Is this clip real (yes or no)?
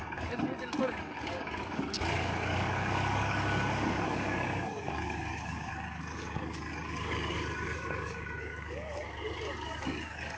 no